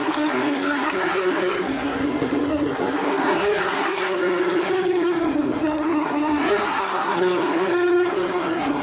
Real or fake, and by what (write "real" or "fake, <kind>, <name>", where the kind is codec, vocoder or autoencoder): fake, codec, SNAC